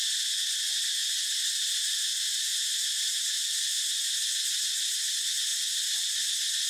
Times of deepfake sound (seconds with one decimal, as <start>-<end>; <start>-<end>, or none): none